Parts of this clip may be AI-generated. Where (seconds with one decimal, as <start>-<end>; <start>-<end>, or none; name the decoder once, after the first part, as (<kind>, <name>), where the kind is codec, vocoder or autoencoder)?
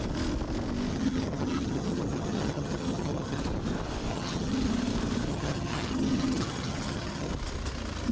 0.9-3.4 (vocoder, HiFi-GAN); 4.1-4.7; 5.3-7.3